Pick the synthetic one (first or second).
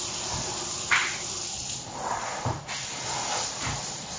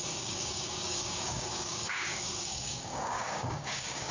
second